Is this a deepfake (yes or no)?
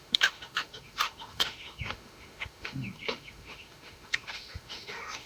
yes